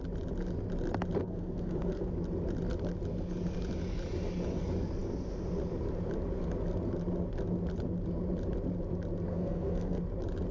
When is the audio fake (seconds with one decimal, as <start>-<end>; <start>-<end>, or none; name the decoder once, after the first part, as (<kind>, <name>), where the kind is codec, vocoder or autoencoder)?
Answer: 1.2-2.1 (codec, SNAC); 9.3-10.0